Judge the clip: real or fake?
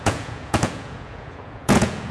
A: fake